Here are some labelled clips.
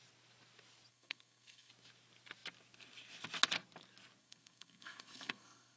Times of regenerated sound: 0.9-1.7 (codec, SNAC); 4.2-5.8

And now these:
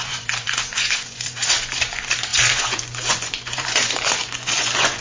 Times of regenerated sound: 0.0-5.0 (vocoder, Vocos)

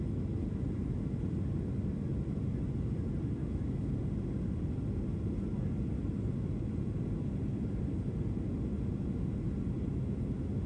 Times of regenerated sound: 3.4-3.9 (autoencoder, DAC-VAE)

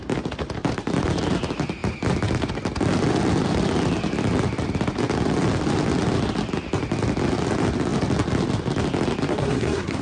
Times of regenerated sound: 9.3-10.0 (codec, SNAC)

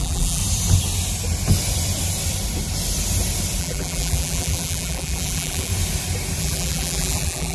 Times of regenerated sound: 0.0-0.4 (vocoder, BigVGAN v2); 3.6-5.7; 6.4-7.5

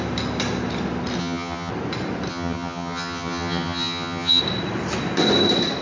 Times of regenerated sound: 1.2-1.7 (vocoder, HiFi-GAN); 2.3-4.4

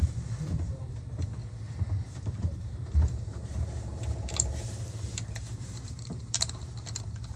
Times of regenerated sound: 0.0-0.8 (vocoder, BigVGAN v2); 2.0-7.4

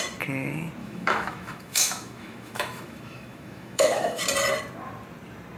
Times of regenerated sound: 0.8-4.2 (autoencoder, DAC-VAE)